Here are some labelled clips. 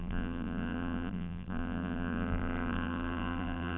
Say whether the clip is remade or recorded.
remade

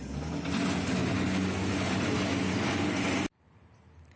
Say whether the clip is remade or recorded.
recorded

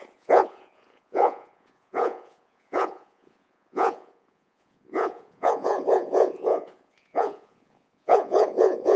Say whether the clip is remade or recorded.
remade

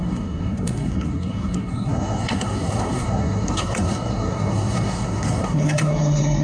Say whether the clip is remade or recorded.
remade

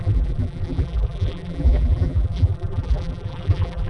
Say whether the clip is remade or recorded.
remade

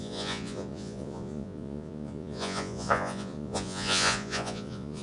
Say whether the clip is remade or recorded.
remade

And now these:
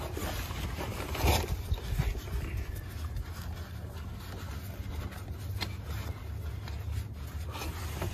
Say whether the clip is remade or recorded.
recorded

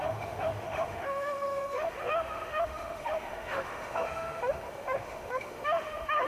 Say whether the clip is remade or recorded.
remade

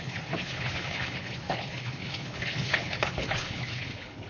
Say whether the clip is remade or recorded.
remade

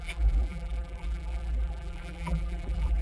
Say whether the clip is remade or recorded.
remade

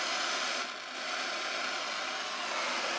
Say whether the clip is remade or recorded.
recorded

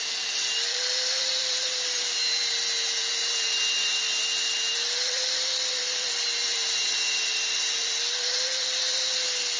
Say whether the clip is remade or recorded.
remade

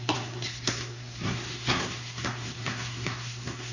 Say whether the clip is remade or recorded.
remade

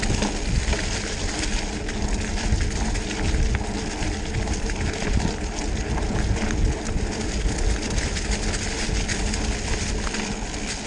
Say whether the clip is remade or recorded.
recorded